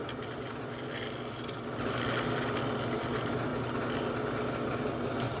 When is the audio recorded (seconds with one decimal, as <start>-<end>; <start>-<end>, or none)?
3.0-5.4